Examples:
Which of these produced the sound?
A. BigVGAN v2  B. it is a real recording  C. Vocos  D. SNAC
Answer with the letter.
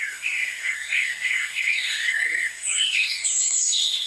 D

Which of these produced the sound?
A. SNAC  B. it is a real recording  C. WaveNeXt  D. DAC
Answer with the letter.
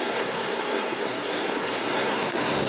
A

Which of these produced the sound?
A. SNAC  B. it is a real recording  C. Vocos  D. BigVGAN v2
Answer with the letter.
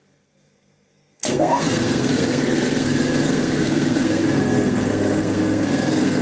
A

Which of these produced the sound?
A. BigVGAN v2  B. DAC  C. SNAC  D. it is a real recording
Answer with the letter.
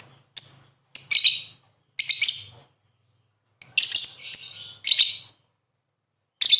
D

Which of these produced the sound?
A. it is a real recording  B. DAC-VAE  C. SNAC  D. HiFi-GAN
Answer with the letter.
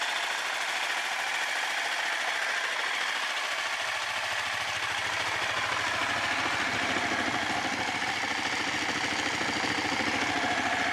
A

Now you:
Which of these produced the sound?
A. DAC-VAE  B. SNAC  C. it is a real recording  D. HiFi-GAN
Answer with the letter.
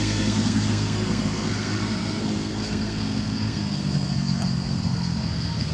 B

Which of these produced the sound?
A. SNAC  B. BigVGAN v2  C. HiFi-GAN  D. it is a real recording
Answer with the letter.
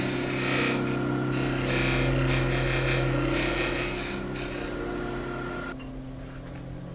D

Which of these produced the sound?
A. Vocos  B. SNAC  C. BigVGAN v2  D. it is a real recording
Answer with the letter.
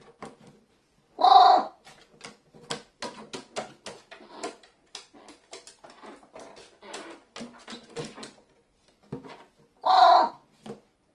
D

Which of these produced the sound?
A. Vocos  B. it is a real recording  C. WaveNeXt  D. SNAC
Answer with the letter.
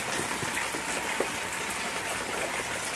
B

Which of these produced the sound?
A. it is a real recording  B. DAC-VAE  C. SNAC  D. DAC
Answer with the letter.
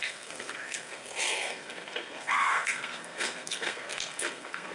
C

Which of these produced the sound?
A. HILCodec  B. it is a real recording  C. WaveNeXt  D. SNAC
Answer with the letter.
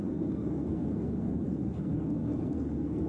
D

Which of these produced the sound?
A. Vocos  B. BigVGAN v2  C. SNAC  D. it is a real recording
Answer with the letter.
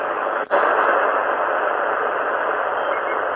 D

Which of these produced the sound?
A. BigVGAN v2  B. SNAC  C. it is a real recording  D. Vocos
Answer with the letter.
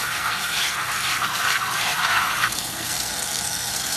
B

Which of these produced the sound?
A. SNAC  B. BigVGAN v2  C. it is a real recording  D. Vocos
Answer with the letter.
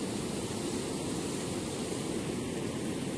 C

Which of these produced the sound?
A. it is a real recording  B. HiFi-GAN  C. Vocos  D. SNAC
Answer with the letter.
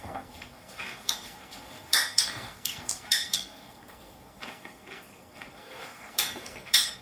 D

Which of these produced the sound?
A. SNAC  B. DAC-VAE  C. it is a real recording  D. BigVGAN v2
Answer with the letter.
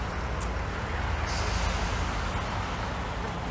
C